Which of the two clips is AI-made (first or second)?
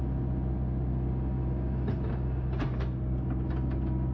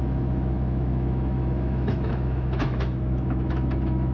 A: second